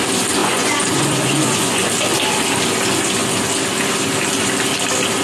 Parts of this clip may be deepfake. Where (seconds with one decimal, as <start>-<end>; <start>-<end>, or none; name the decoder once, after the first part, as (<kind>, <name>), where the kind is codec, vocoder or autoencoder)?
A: 0.4-1.9 (vocoder, Vocos)